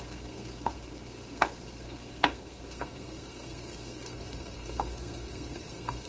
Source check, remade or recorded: remade